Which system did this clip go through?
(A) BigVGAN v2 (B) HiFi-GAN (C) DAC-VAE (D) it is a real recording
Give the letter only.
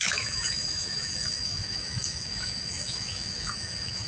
C